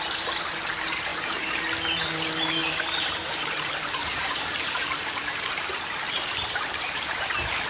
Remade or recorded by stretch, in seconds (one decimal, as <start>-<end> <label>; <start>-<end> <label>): 0.0-1.1 recorded; 1.1-1.6 remade; 1.6-2.6 recorded; 2.6-7.2 remade; 7.2-7.7 recorded

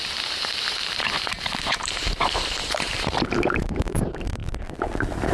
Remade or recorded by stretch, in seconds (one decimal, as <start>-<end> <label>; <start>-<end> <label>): 0.0-0.8 recorded; 0.8-4.0 remade; 4.0-5.3 recorded

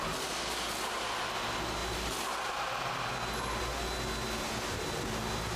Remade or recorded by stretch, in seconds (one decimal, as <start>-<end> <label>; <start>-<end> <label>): 0.0-5.6 recorded

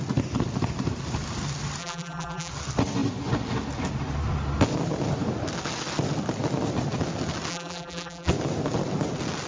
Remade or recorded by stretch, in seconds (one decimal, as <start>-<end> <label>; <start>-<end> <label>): 0.0-1.8 recorded; 1.8-2.5 remade; 2.5-7.5 recorded; 7.5-8.3 remade; 8.3-9.5 recorded

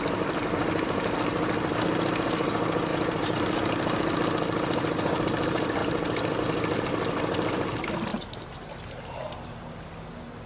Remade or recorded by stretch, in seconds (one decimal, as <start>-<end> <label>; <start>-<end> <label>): 0.0-2.9 recorded; 2.9-3.7 remade; 3.7-5.8 recorded; 5.8-6.4 remade; 6.4-8.1 recorded; 8.1-9.7 remade; 9.7-10.5 recorded

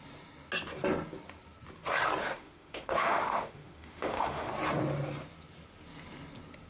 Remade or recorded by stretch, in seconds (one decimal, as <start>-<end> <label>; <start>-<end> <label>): 0.0-2.2 recorded; 2.2-4.5 remade; 4.5-6.7 recorded

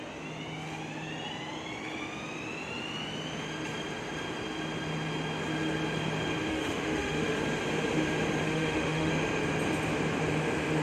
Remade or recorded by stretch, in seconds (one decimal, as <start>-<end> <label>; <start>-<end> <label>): 0.0-6.5 recorded; 6.5-7.4 remade; 7.4-8.4 recorded; 8.4-9.1 remade; 9.1-10.8 recorded